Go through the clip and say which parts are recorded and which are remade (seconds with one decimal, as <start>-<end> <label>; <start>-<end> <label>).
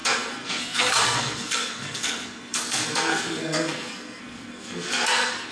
0.0-5.5 remade